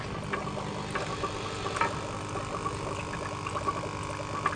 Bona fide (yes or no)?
yes